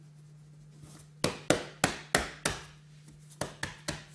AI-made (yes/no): no